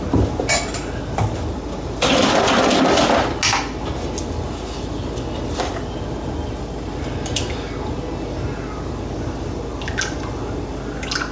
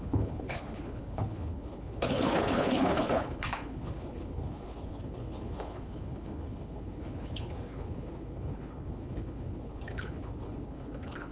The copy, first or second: second